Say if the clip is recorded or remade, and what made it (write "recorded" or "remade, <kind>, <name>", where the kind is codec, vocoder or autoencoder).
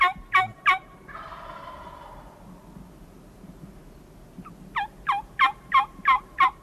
recorded